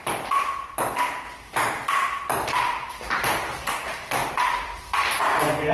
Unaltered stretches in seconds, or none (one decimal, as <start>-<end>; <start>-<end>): 0.0-5.7